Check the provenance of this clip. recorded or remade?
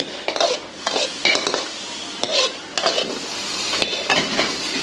recorded